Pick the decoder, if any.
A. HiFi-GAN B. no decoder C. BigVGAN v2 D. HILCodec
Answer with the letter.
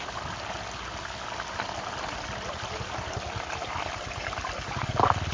B